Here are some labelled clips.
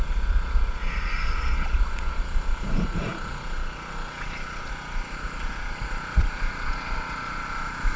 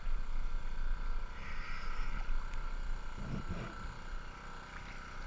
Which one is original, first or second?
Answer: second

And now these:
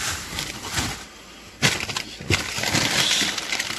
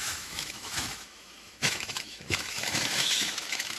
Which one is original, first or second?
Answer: first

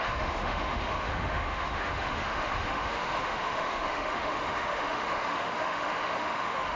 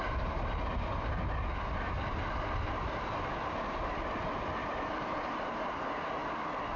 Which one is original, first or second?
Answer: second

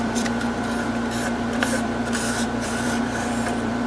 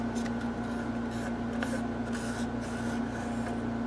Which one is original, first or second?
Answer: second